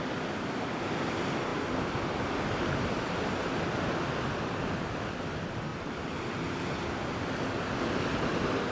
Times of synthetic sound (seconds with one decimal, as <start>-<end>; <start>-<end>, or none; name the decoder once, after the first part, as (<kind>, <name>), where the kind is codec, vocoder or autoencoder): none